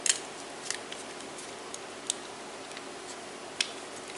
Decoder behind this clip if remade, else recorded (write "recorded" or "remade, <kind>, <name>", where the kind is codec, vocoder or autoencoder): recorded